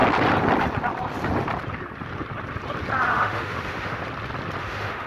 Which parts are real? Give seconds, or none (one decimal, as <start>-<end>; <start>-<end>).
0.0-3.1; 4.0-4.6